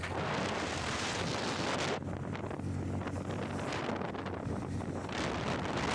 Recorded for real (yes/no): yes